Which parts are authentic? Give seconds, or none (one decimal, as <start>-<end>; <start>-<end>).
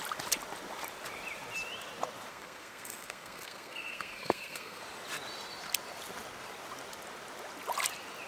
0.0-2.3; 4.8-8.3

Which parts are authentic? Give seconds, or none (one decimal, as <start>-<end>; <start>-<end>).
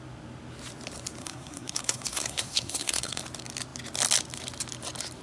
0.0-1.2; 3.2-5.2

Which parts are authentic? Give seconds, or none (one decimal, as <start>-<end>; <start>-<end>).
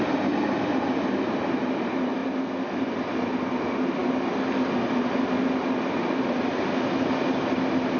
0.0-8.0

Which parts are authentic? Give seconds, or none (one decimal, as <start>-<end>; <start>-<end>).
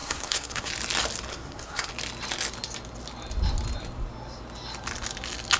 0.7-1.3; 1.9-5.6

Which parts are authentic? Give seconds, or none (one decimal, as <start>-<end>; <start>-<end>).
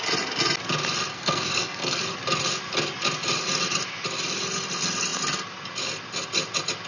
0.0-1.1; 2.0-6.9